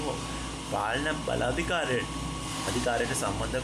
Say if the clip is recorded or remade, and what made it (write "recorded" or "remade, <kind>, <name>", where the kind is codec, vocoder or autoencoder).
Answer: recorded